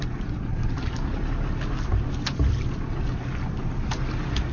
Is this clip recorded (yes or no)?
yes